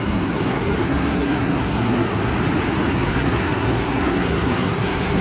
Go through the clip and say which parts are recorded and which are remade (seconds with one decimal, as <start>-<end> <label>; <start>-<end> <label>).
0.0-2.3 remade; 2.3-2.9 recorded; 2.9-5.2 remade